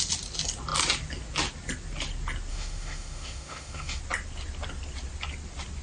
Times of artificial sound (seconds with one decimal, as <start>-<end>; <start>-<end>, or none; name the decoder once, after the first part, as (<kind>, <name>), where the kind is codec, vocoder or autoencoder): 2.5-4.0 (autoencoder, DAC-VAE)